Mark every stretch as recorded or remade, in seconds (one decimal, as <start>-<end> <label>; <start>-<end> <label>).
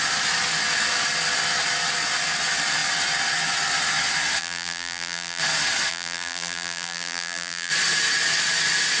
0.0-4.4 recorded; 4.4-5.4 remade; 5.4-5.9 recorded; 5.9-7.7 remade; 7.7-9.0 recorded